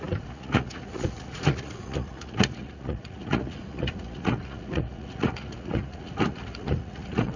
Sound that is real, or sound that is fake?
fake